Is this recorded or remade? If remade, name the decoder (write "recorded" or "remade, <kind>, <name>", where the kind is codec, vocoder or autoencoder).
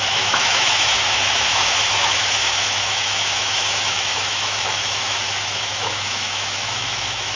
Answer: remade, autoencoder, DAC-VAE